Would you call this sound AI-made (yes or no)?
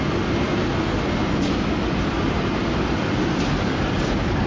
no